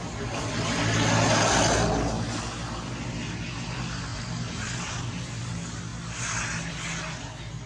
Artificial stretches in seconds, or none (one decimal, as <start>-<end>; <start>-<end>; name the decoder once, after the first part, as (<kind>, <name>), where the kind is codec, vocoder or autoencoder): 4.1-5.4 (vocoder, BigVGAN v2)